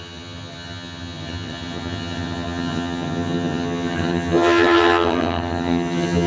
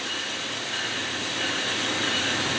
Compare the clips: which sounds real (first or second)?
second